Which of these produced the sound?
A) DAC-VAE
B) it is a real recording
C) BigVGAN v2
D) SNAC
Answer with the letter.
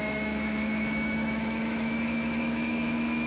A